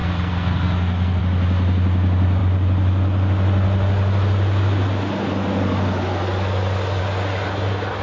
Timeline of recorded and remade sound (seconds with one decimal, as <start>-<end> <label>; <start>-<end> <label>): 0.0-1.2 remade; 1.2-8.0 recorded